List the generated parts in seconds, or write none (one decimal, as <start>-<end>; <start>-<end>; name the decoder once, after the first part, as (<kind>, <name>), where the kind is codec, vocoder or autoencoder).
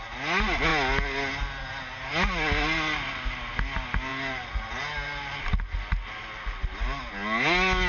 none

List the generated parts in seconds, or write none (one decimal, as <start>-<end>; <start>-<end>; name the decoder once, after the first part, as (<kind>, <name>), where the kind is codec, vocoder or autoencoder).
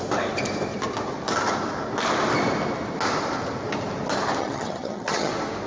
4.4-5.3 (vocoder, HiFi-GAN)